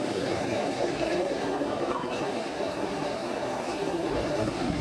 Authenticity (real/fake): fake